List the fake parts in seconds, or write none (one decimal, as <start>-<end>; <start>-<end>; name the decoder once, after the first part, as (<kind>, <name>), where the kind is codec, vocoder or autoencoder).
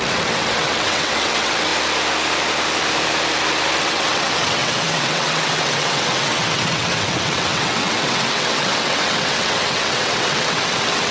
0.0-1.7 (vocoder, WaveNeXt); 3.8-11.1